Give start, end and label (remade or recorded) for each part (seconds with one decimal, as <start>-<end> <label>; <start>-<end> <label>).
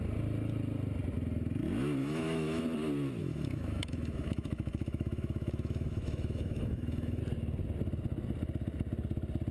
0.0-2.0 recorded; 2.0-2.6 remade; 2.6-3.2 recorded; 3.2-7.2 remade; 7.2-9.5 recorded